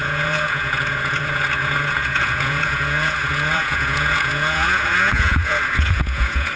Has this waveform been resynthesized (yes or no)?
yes